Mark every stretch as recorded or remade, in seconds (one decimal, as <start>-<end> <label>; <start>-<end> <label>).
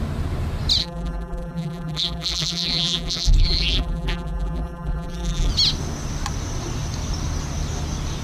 0.0-0.8 recorded; 0.8-5.5 remade; 5.5-8.2 recorded